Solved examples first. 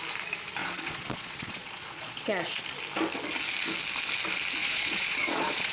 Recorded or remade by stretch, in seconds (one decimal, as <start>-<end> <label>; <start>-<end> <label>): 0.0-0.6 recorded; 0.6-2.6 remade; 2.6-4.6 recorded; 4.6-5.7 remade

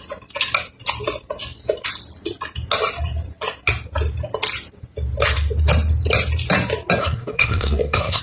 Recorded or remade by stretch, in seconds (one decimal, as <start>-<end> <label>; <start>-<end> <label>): 0.0-7.0 recorded; 7.0-8.2 remade

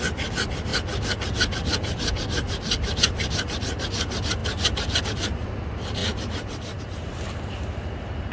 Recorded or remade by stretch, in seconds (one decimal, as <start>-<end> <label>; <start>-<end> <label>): 0.0-8.3 recorded

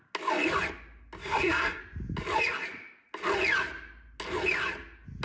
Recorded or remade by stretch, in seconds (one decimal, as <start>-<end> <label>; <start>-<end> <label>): 0.0-1.2 recorded; 1.2-1.8 remade; 1.8-5.2 recorded